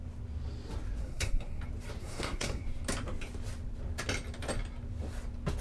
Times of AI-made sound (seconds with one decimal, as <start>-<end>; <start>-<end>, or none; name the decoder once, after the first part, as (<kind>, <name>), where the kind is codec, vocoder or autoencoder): 1.0-1.6 (codec, SNAC); 2.0-2.6